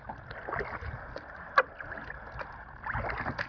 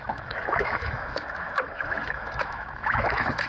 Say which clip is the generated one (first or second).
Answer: second